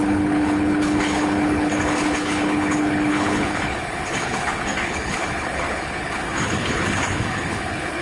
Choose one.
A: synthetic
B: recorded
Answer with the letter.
A